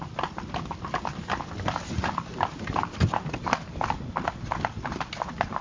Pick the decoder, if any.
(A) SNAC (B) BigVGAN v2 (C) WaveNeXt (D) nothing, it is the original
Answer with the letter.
D